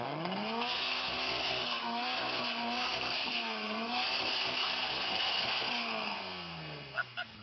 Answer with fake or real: fake